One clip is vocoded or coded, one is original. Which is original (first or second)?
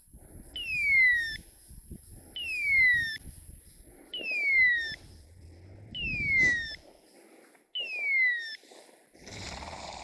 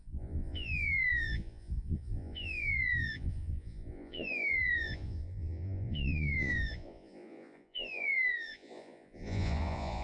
first